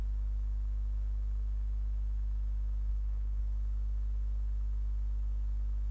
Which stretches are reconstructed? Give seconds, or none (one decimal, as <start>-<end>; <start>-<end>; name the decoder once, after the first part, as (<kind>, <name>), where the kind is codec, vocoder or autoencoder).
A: 2.9-3.4 (codec, SNAC)